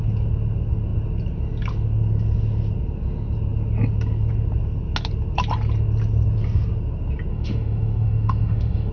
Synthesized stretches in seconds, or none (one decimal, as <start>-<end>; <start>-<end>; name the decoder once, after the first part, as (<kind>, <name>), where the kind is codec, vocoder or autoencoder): 7.3-8.9 (autoencoder, DAC-VAE)